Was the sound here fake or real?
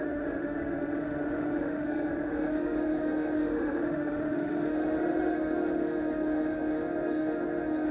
fake